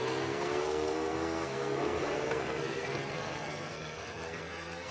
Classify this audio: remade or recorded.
remade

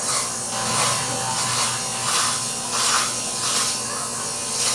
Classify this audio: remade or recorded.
recorded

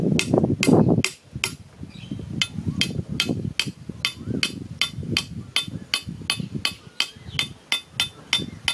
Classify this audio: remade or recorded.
recorded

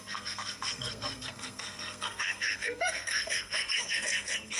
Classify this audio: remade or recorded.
remade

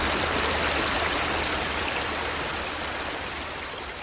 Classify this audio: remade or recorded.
recorded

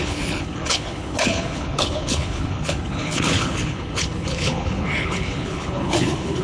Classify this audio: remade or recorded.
remade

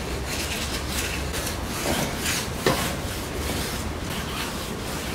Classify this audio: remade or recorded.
recorded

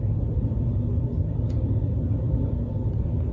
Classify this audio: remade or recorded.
recorded